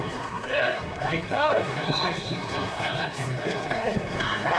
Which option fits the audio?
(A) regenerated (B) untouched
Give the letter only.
A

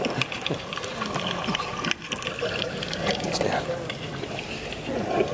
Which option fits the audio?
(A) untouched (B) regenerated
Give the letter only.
A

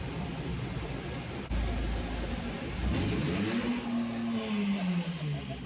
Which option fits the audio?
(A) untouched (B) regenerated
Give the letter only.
A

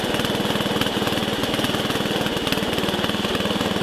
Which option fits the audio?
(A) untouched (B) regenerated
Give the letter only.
A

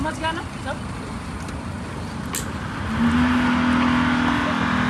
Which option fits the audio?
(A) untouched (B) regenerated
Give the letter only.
A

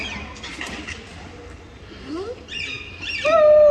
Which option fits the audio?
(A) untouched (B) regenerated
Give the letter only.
A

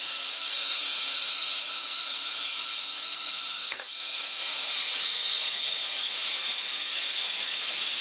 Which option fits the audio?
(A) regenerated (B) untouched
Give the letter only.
A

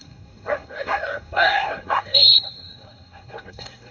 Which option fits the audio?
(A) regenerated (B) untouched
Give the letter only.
A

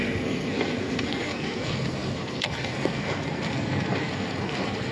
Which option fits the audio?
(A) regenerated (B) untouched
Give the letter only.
A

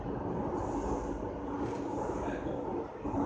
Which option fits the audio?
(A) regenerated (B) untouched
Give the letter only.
B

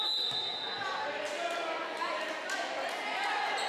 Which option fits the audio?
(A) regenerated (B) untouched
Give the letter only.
B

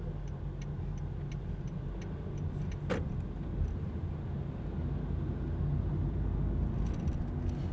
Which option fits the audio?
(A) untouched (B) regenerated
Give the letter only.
A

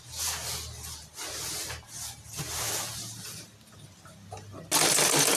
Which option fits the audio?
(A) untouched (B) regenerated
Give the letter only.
A